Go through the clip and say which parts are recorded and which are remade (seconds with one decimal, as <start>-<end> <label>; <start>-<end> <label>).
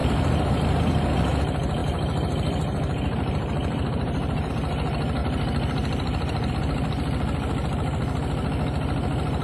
0.0-1.8 recorded; 1.8-4.5 remade; 4.5-5.2 recorded; 5.2-6.5 remade; 6.5-9.4 recorded